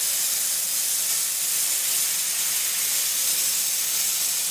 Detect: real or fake real